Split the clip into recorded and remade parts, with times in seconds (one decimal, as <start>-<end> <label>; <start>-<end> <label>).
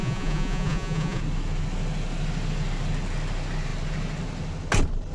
0.0-1.2 remade; 1.2-5.1 recorded